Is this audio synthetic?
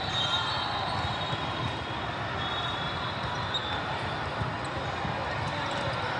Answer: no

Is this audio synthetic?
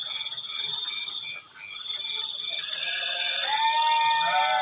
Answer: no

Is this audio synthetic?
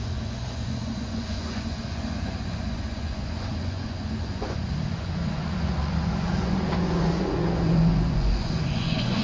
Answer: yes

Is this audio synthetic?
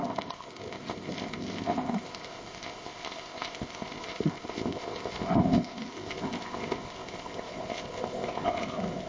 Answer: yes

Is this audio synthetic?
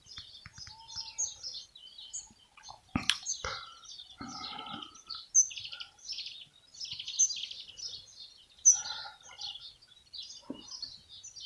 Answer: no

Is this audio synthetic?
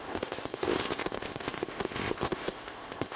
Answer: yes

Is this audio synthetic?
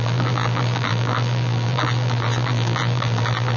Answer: yes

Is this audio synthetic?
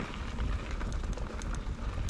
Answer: no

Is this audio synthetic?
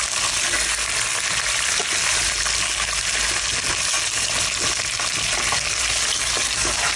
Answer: no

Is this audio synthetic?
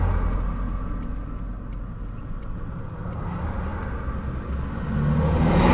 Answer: no